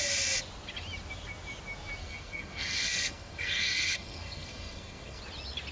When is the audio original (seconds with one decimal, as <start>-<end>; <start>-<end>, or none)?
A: 0.0-2.0; 5.2-5.7